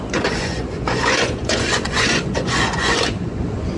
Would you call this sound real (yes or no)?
no